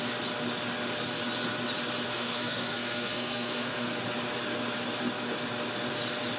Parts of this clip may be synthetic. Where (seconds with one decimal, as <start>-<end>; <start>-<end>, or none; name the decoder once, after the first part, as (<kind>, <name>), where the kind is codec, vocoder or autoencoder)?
2.1-4.0 (codec, SNAC)